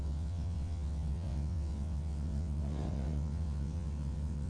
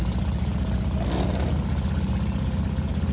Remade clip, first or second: first